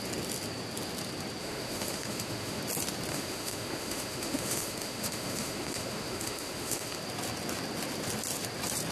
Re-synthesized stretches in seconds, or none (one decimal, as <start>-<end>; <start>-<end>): 1.4-2.6; 3.1-7.0